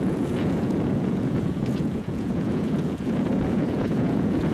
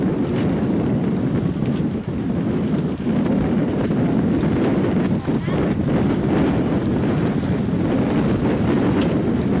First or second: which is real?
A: second